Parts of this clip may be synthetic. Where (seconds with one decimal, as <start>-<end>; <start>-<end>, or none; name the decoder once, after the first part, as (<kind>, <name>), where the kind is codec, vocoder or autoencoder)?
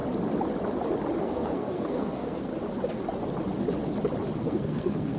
1.2-2.5 (codec, SNAC); 4.4-5.2